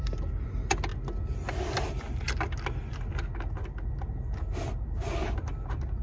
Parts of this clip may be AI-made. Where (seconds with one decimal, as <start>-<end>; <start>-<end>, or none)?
none